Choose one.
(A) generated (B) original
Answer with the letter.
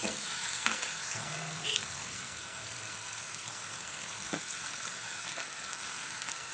A